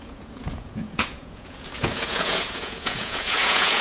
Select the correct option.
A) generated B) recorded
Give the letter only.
A